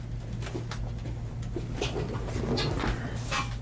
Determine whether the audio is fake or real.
real